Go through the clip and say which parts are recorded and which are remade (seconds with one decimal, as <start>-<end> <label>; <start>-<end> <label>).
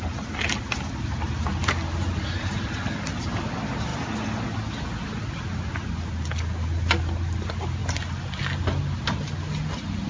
0.0-10.1 recorded